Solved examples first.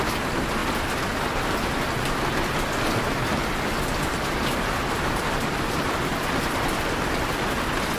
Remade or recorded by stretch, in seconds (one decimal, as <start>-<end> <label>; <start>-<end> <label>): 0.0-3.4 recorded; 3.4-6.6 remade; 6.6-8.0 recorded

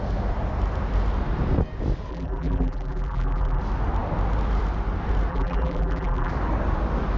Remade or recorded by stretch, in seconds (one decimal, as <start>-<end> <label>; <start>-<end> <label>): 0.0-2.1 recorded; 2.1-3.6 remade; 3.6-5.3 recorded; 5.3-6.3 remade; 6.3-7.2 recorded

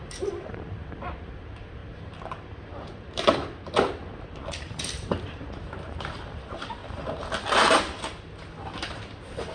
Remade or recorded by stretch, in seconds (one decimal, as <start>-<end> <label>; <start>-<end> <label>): 0.0-6.8 remade; 6.8-8.8 recorded; 8.8-9.5 remade

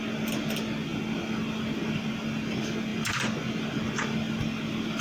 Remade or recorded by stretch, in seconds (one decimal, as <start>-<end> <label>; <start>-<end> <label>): 0.0-5.0 recorded